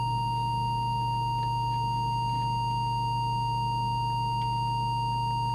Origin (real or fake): real